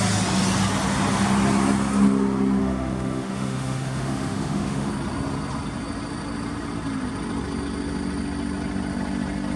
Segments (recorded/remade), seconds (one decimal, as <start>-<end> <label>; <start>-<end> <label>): 0.0-2.6 recorded; 2.6-4.9 remade; 4.9-9.6 recorded

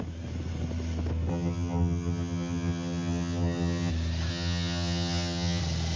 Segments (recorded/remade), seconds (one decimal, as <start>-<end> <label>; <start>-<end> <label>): 0.0-1.3 recorded; 1.3-3.9 remade; 3.9-4.3 recorded; 4.3-5.6 remade; 5.6-6.0 recorded